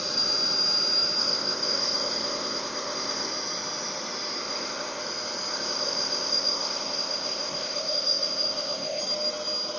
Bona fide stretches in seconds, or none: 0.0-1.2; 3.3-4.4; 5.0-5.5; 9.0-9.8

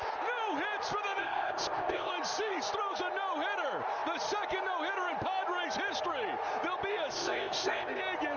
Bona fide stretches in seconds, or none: 0.0-1.2; 2.1-7.1; 8.0-8.4

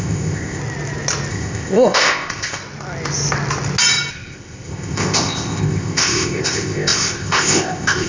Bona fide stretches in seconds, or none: 0.6-1.3; 2.6-4.1